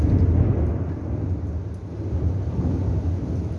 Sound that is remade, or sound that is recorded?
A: recorded